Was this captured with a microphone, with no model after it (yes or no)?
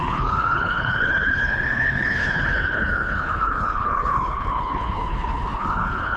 no